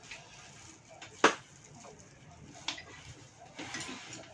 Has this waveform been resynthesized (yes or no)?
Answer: no